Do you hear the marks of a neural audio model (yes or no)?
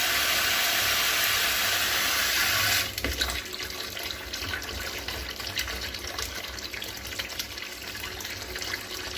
no